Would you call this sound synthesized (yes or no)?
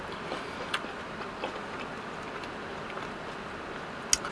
no